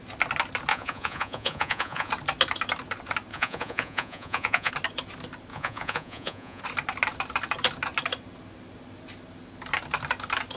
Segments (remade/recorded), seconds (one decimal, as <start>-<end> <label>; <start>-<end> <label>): 0.0-0.7 recorded; 0.7-2.1 remade; 2.1-3.3 recorded; 3.3-4.7 remade; 4.7-5.5 recorded; 5.5-6.6 remade; 6.6-10.6 recorded